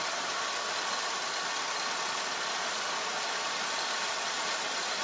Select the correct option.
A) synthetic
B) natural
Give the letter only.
B